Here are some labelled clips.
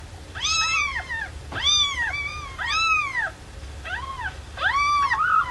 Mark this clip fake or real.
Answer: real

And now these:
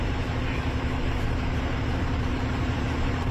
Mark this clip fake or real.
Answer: fake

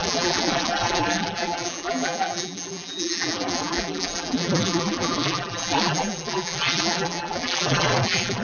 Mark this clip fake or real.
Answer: fake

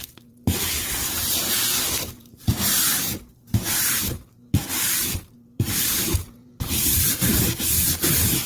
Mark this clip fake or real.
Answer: fake